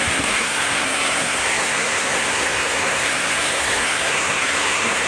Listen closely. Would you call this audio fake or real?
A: fake